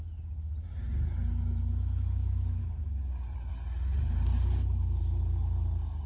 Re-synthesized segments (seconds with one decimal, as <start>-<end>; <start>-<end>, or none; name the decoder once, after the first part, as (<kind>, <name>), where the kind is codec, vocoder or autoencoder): 1.3-2.6 (autoencoder, DAC-VAE)